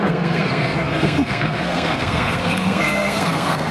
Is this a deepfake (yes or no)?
yes